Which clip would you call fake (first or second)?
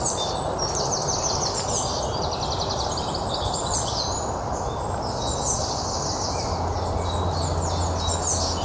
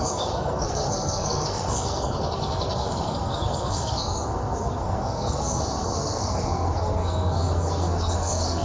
second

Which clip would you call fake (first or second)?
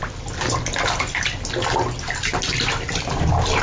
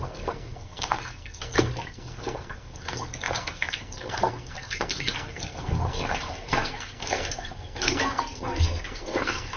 second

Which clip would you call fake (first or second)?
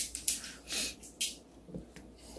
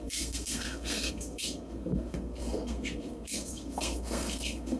second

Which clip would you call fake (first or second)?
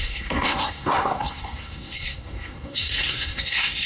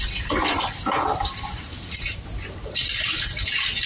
first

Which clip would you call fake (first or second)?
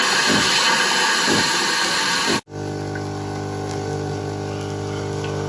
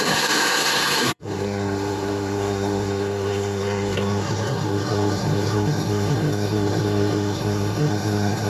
second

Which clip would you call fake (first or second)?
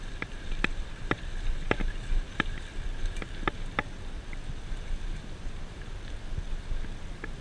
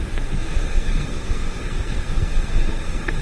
second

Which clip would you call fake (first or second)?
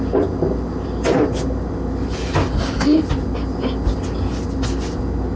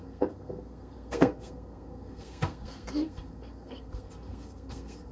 second